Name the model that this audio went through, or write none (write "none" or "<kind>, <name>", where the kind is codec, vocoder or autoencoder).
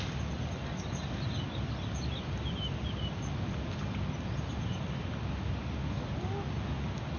none